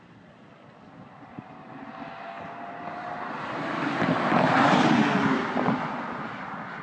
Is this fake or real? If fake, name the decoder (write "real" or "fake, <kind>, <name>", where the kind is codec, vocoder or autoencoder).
real